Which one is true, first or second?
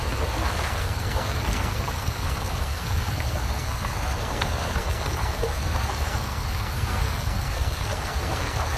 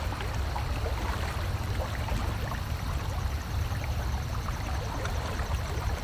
second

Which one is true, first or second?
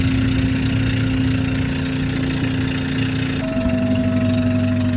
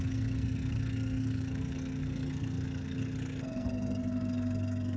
first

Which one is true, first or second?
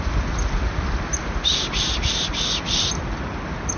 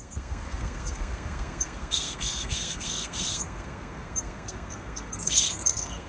first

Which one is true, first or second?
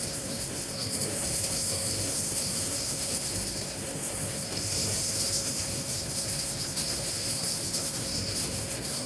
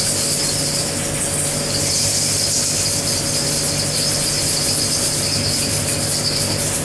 second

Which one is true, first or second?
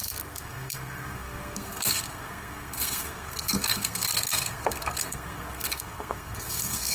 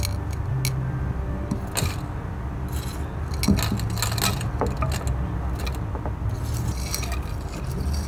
second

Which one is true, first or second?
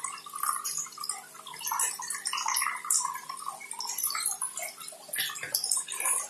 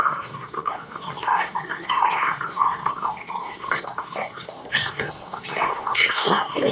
first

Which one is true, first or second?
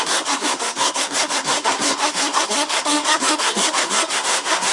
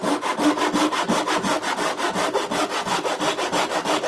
second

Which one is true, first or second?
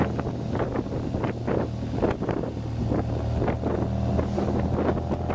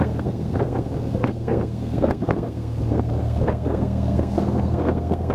first